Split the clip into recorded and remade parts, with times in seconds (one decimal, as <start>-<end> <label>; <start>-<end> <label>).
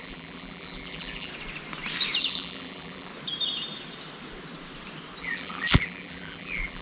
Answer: 0.0-1.3 remade; 1.3-2.2 recorded; 2.2-3.1 remade; 3.1-5.2 recorded; 5.2-6.8 remade